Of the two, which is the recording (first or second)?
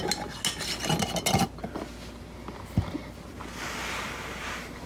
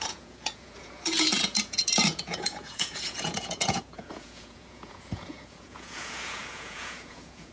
first